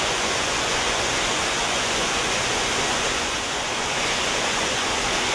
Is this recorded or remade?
remade